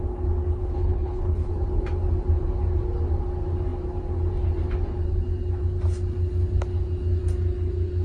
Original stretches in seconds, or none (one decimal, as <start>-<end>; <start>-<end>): 0.0-0.6; 1.5-8.0

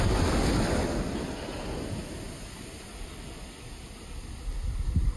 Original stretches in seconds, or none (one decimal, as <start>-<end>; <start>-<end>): 0.0-5.2